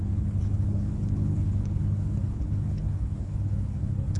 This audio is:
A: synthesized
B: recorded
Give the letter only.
A